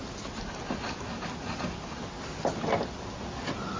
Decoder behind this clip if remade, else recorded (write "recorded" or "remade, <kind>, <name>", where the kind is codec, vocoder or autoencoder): recorded